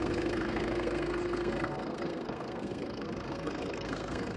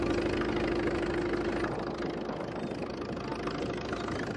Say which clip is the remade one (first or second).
first